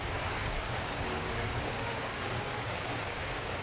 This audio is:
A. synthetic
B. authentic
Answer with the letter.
A